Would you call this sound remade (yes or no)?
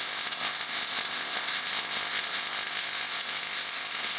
yes